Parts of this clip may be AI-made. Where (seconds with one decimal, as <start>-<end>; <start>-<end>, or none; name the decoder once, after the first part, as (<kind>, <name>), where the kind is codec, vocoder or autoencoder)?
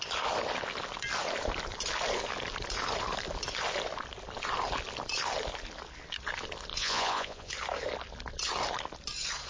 6.7-7.5 (vocoder, Vocos)